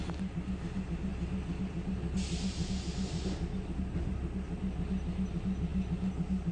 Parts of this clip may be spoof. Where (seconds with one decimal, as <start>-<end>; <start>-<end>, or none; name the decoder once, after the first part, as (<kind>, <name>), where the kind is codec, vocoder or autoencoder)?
none

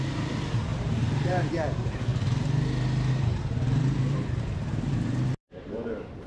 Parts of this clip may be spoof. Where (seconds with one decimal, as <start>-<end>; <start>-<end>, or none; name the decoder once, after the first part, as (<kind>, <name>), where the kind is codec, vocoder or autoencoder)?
0.0-2.1 (vocoder, BigVGAN v2); 3.1-6.3

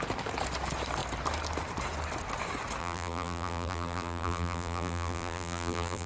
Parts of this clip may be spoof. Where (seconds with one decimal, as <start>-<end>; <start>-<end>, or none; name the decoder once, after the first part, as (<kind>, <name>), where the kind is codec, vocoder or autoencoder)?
2.8-6.1 (vocoder, BigVGAN v2)

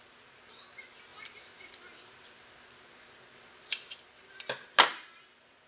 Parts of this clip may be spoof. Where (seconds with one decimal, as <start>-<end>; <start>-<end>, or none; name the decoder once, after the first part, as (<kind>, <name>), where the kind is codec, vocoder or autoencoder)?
none

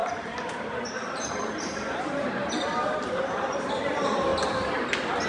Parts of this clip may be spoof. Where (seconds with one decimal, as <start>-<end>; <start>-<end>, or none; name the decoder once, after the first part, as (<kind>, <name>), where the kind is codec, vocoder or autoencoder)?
0.0-4.3 (vocoder, BigVGAN v2)

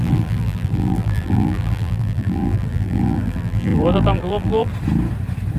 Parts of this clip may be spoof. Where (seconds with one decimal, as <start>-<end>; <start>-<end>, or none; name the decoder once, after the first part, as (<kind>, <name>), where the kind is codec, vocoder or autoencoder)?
0.0-4.7 (vocoder, BigVGAN v2)